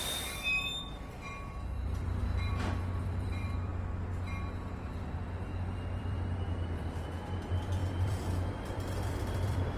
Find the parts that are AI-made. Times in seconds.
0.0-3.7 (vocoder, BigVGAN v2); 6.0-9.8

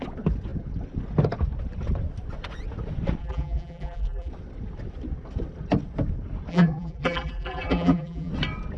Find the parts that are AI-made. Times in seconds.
3.2-4.3 (vocoder, BigVGAN v2); 6.5-8.3